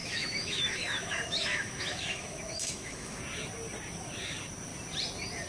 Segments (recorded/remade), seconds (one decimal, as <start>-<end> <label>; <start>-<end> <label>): 0.0-3.2 remade; 3.2-5.5 recorded